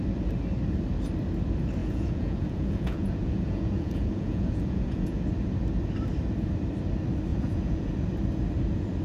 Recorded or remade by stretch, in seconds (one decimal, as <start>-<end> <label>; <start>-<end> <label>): 0.0-1.8 recorded; 1.8-5.2 remade; 5.2-7.3 recorded; 7.3-7.9 remade; 7.9-9.0 recorded